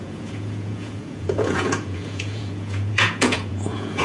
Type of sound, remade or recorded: remade